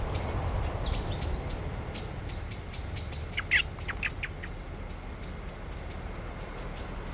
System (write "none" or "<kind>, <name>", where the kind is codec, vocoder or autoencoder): none